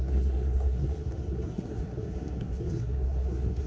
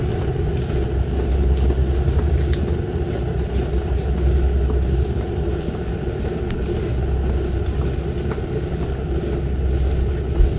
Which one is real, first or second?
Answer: second